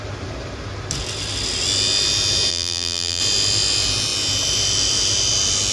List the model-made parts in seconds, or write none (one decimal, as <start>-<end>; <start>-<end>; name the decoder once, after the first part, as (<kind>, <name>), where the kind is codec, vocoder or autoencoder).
2.5-3.2 (vocoder, BigVGAN v2)